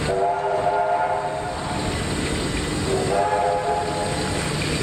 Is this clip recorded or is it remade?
recorded